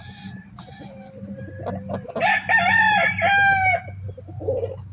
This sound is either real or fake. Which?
real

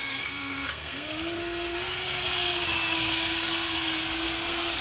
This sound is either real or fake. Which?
fake